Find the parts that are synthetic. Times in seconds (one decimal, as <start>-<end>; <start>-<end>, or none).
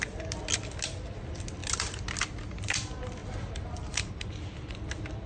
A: 3.2-4.7